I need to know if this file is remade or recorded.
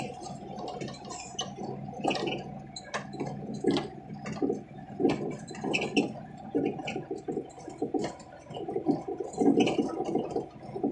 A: recorded